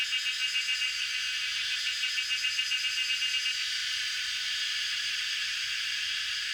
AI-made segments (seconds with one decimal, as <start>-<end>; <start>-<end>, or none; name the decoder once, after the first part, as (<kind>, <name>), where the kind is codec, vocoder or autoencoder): 1.5-2.2 (vocoder, BigVGAN v2); 3.8-5.2